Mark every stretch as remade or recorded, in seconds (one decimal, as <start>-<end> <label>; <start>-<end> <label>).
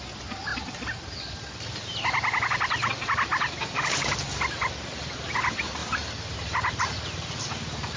0.0-0.5 recorded; 0.5-3.8 remade; 3.8-8.0 recorded